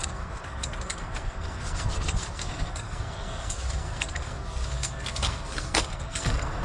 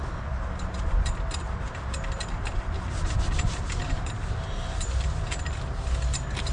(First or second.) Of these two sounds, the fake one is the first